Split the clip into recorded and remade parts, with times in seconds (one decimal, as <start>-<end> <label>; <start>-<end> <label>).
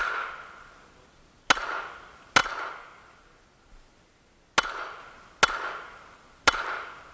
0.0-7.1 recorded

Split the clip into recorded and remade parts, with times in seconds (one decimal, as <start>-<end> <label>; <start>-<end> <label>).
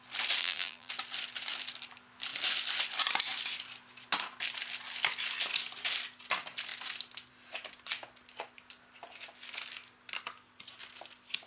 0.0-0.4 recorded; 0.4-0.9 remade; 0.9-11.5 recorded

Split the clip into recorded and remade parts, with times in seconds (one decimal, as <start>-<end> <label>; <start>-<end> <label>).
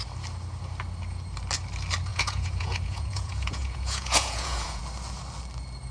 0.0-2.1 recorded; 2.1-4.8 remade; 4.8-5.9 recorded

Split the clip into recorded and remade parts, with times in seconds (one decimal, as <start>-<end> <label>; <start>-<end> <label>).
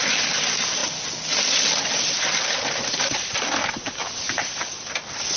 0.0-5.4 recorded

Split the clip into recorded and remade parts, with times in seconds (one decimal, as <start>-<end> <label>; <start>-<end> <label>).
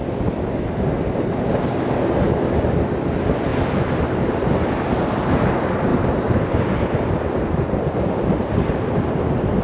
0.0-5.9 recorded; 5.9-8.8 remade; 8.8-9.6 recorded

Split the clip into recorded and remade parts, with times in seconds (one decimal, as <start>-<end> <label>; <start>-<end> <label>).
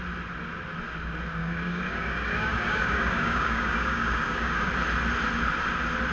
0.0-1.4 recorded; 1.4-4.7 remade; 4.7-6.1 recorded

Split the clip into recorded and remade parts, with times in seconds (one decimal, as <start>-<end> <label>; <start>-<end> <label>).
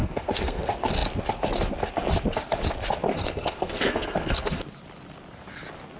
0.0-0.6 remade; 0.6-3.1 recorded; 3.1-4.6 remade; 4.6-6.0 recorded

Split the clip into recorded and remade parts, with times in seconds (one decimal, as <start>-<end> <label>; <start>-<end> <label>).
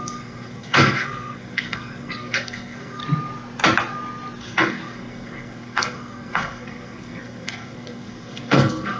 0.0-3.0 remade; 3.0-4.4 recorded; 4.4-9.0 remade